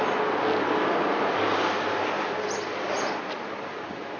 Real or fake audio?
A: real